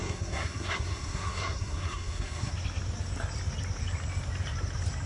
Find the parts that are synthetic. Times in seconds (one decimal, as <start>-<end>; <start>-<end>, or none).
0.0-2.5